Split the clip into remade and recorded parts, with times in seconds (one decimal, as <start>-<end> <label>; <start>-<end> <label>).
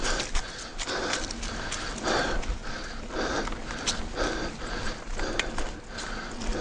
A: 0.0-6.6 recorded